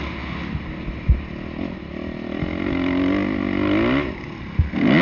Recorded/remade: recorded